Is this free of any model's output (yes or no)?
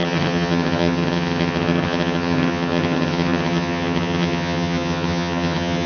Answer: no